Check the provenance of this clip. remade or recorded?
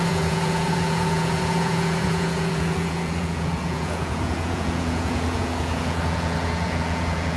remade